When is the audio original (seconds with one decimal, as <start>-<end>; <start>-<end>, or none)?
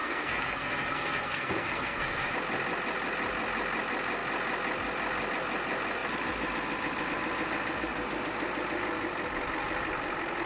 2.3-10.5